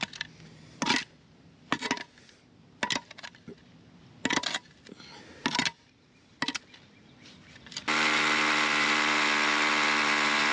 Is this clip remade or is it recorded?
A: recorded